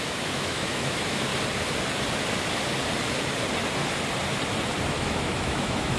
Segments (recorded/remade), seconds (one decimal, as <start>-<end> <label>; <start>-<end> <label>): 0.0-1.3 remade; 1.3-4.9 recorded; 4.9-6.0 remade